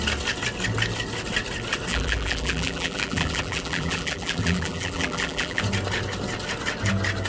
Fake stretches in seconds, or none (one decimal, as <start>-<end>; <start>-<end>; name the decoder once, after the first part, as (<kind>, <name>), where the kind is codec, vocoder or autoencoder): 1.9-5.6 (vocoder, BigVGAN v2)